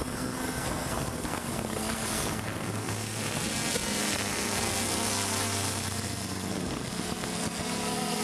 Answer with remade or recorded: remade